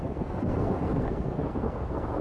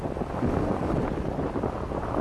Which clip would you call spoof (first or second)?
first